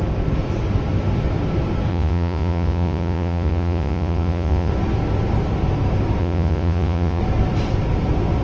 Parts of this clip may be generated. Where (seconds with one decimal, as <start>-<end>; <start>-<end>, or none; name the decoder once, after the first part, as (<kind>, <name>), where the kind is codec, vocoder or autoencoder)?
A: 1.9-4.7 (vocoder, Vocos); 6.2-7.2